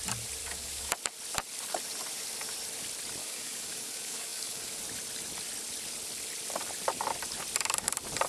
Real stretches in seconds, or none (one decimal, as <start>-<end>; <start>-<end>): 0.0-0.4; 0.9-3.2; 4.8-8.3